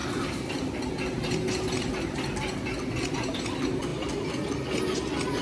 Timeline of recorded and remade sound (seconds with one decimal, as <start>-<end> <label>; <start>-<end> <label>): 0.0-5.4 recorded